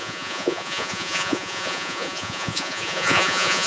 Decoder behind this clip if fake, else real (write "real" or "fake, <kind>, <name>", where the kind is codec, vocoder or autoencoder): fake, vocoder, Vocos